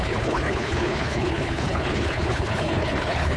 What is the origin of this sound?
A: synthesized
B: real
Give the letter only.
A